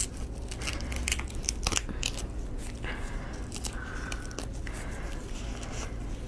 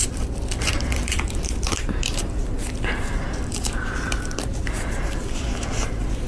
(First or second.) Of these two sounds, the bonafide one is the first